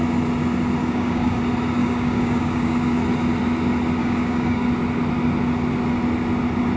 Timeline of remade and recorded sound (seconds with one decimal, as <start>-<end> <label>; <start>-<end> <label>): 0.0-0.8 recorded; 0.8-1.4 remade; 1.4-1.8 recorded; 1.8-3.0 remade; 3.0-4.0 recorded; 4.0-4.7 remade; 4.7-6.8 recorded